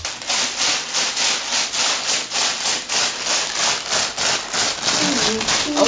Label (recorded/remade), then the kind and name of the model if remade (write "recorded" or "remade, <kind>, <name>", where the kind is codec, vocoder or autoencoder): recorded